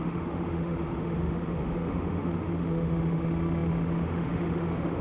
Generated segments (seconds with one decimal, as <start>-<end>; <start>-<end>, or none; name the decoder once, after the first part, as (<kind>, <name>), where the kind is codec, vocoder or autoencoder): 0.0-5.0 (autoencoder, DAC-VAE)